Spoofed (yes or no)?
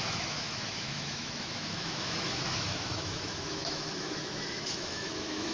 yes